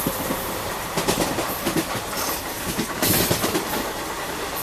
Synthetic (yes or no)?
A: no